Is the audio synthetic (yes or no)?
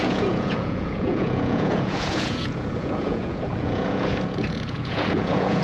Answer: yes